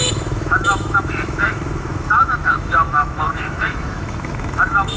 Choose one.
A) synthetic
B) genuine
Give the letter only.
A